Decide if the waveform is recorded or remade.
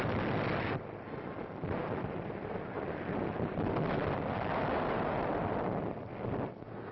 recorded